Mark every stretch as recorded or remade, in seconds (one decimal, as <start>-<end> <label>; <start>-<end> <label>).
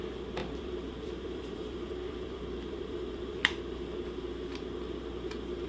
0.0-0.4 recorded; 0.4-3.8 remade; 3.8-5.7 recorded